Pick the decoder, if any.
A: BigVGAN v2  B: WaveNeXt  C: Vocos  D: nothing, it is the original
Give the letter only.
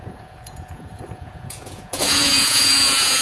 C